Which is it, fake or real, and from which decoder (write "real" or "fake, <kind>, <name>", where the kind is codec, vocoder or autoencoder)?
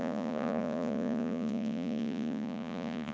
fake, vocoder, Vocos